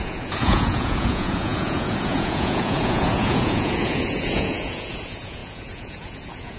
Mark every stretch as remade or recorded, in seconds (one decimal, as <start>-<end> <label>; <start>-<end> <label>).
0.0-6.6 remade